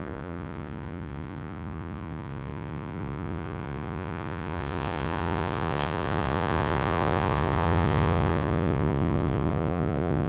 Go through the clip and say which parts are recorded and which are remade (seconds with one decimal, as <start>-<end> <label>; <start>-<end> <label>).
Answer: 0.0-10.3 remade